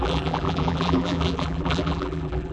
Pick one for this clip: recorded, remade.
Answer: remade